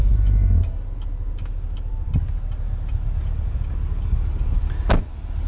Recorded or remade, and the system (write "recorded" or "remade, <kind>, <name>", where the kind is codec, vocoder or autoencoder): recorded